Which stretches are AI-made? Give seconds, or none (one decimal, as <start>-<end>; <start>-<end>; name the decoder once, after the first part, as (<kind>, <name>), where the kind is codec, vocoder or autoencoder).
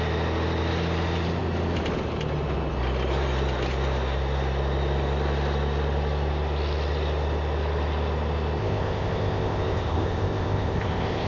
8.6-11.3 (codec, ZipCodec)